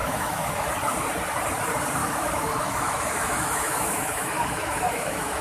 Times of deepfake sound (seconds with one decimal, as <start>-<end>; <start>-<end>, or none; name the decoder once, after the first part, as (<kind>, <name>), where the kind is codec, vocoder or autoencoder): 0.0-0.7 (autoencoder, DAC-VAE); 2.0-5.4

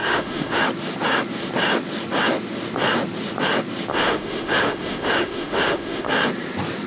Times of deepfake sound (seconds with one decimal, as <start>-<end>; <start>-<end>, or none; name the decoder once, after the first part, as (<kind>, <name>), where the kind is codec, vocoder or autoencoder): 0.0-0.6 (autoencoder, DAC-VAE); 3.9-6.1

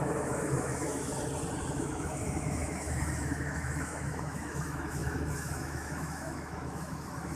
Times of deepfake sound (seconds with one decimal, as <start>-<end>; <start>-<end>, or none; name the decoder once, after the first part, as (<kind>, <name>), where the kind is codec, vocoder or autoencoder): 0.0-1.1 (autoencoder, DAC-VAE); 1.7-7.4

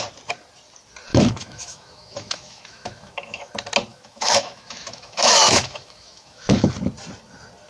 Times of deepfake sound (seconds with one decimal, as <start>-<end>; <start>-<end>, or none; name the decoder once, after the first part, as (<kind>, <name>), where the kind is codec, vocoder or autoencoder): 1.1-3.5 (autoencoder, DAC-VAE); 3.9-6.7

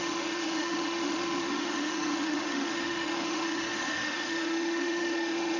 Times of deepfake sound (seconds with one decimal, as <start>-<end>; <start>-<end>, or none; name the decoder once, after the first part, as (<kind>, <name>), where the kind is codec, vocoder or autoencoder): 0.0-5.6 (autoencoder, DAC-VAE)

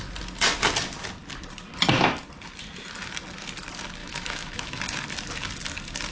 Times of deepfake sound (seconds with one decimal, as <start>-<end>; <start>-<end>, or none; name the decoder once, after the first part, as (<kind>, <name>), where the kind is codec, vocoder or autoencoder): 4.0-4.8 (autoencoder, DAC-VAE)

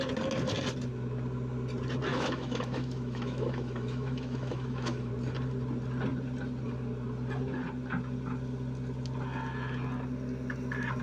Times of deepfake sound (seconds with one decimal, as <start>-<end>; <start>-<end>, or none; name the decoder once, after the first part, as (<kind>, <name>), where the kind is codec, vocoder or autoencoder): 2.1-5.1 (autoencoder, DAC-VAE)

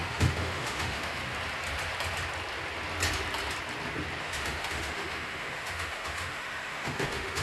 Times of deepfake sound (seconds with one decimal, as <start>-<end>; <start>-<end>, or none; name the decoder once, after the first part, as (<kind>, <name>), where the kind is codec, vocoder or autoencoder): 0.0-1.2 (autoencoder, DAC-VAE); 4.2-7.4